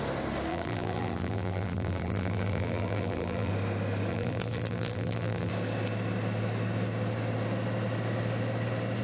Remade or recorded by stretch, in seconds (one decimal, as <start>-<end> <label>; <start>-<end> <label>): 0.0-0.5 recorded; 0.5-3.5 remade; 3.5-4.1 recorded; 4.1-5.5 remade; 5.5-9.0 recorded